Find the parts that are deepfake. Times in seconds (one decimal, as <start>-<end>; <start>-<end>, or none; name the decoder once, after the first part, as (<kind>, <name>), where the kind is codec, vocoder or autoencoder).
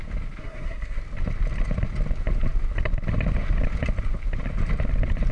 0.4-1.0 (codec, SNAC)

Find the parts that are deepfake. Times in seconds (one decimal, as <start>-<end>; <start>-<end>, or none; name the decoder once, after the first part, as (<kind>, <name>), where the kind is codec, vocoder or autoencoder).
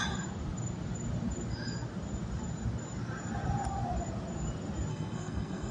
4.9-5.7 (codec, SNAC)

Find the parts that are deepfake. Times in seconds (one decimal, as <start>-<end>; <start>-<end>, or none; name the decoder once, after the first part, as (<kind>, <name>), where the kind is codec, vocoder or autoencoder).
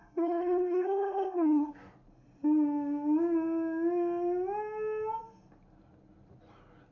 0.0-1.7 (codec, SNAC)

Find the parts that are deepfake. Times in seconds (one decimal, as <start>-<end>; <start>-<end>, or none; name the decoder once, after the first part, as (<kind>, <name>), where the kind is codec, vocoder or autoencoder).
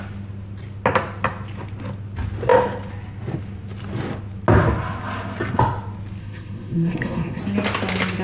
6.2-7.4 (codec, SNAC)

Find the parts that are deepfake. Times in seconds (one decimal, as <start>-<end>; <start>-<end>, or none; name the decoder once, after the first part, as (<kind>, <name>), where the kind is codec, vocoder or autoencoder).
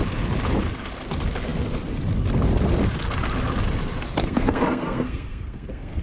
4.2-6.0 (codec, SNAC)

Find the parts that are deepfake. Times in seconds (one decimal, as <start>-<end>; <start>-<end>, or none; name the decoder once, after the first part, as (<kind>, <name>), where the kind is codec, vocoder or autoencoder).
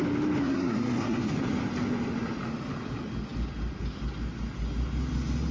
0.4-1.4 (codec, SNAC)